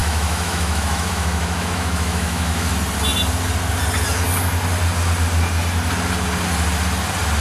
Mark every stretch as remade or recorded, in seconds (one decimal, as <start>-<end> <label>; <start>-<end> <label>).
0.0-2.7 remade; 2.7-7.4 recorded